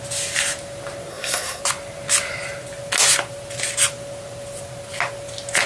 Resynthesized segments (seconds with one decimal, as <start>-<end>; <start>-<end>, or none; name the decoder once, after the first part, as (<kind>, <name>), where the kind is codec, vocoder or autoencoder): 1.1-1.6 (codec, SNAC)